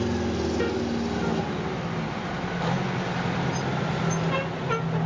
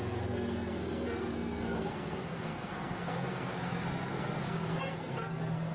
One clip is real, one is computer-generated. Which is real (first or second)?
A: first